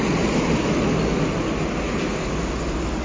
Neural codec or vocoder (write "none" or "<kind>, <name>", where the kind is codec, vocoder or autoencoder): none